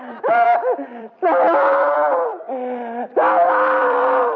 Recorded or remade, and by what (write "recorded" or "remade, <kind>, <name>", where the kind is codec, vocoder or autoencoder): remade, vocoder, BigVGAN v2